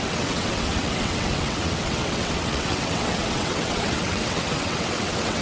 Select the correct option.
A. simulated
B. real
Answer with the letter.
A